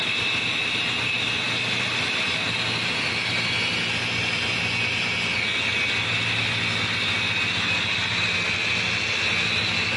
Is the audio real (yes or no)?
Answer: yes